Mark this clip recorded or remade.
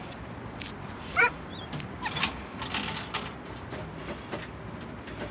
recorded